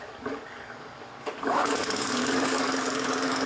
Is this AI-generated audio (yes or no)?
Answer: yes